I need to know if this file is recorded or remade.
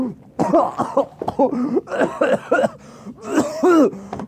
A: remade